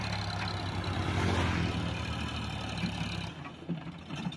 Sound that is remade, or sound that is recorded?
recorded